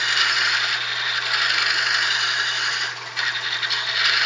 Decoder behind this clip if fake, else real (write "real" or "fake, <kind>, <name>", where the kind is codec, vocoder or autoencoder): real